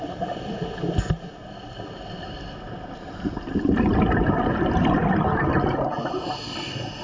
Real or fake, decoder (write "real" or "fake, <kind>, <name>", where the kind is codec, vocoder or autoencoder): real